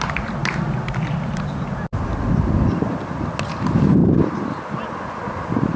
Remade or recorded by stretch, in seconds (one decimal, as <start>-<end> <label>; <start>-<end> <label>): 0.0-5.8 recorded